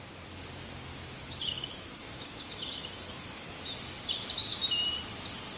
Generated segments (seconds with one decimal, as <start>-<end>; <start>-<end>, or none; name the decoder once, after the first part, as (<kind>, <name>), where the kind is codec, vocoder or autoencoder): 0.9-3.6 (autoencoder, DAC-VAE)